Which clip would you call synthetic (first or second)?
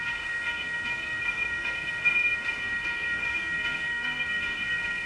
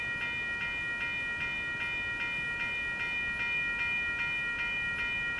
first